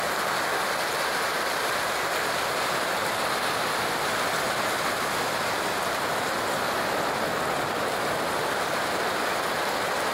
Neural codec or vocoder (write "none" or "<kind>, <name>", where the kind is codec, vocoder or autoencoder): none